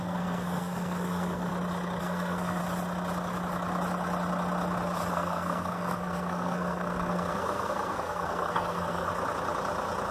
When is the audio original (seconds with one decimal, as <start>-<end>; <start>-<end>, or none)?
1.5-2.0; 2.6-5.1; 9.1-10.1